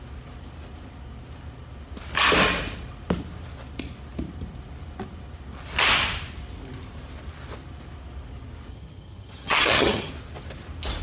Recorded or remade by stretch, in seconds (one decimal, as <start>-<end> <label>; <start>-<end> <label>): 0.0-8.7 recorded; 8.7-10.1 remade; 10.1-11.0 recorded